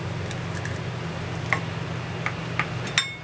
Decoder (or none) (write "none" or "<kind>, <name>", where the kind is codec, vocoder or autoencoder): none